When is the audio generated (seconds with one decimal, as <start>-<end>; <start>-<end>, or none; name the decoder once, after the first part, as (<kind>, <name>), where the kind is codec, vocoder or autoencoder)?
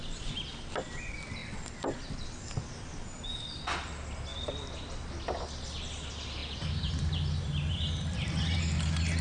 none